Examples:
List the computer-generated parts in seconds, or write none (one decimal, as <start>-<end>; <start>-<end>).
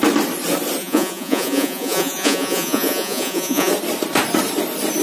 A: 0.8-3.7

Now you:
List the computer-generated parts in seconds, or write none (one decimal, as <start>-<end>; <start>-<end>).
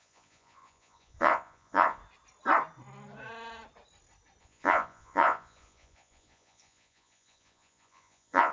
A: 0.0-2.0; 4.4-8.5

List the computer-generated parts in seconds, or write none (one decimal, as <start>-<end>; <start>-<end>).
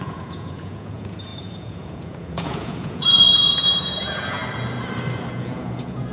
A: 0.0-4.4; 5.3-6.1